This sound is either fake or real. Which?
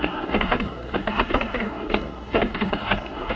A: fake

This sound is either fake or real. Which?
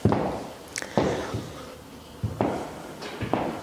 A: real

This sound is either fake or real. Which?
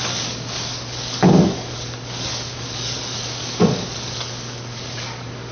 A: fake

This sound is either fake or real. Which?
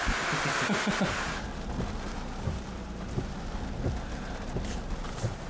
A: real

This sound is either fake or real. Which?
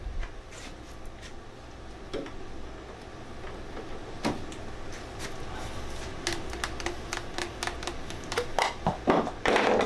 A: real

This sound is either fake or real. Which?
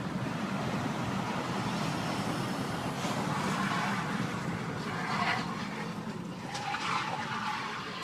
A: real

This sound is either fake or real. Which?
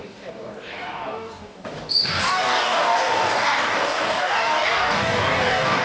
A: fake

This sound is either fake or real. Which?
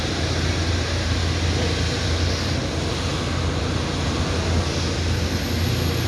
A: real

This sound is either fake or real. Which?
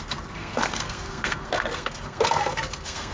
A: fake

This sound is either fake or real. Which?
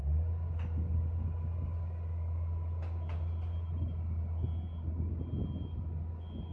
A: real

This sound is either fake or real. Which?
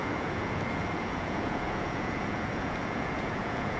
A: fake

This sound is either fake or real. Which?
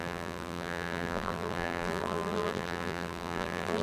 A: fake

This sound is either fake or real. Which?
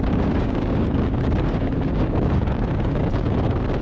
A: fake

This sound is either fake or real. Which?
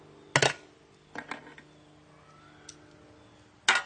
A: real